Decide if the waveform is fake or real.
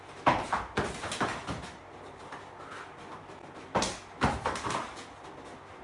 real